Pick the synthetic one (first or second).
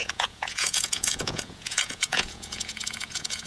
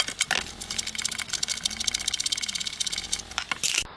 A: first